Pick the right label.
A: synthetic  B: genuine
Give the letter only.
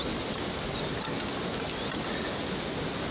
B